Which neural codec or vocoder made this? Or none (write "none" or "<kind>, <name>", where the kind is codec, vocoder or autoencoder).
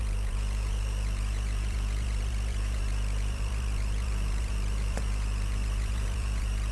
vocoder, Vocos